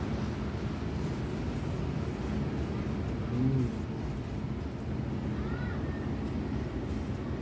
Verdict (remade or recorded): recorded